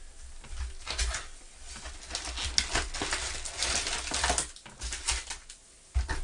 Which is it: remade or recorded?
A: recorded